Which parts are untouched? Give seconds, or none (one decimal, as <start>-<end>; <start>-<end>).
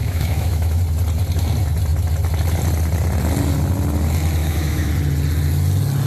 0.8-4.4; 4.9-6.1